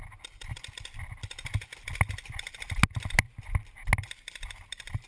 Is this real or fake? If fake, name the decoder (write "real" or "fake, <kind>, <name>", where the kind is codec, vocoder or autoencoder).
real